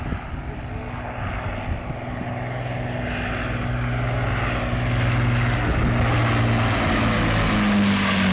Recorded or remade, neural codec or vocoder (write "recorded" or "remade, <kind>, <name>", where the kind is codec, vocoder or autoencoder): recorded